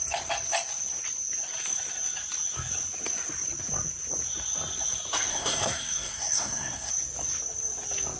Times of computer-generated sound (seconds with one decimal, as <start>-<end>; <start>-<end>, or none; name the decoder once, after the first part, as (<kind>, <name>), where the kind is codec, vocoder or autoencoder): 5.3-6.9 (codec, SNAC)